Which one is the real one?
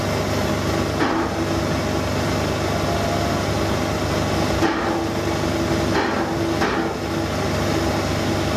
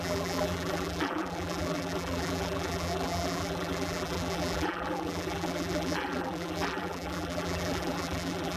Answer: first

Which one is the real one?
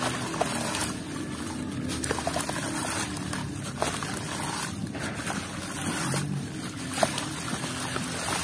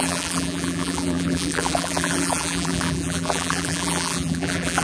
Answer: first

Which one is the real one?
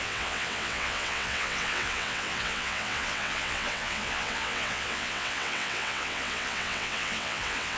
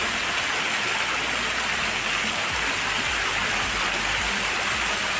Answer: second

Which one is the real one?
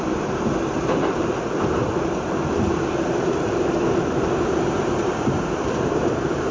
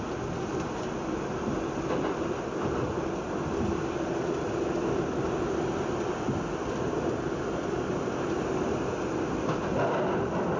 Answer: second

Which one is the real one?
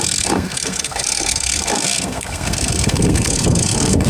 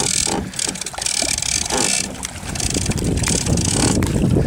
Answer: second